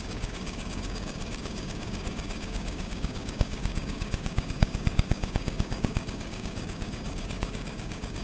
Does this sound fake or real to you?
fake